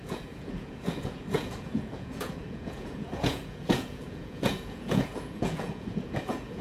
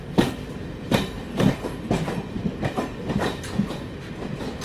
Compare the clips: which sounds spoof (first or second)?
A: first